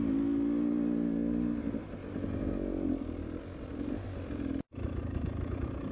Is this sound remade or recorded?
recorded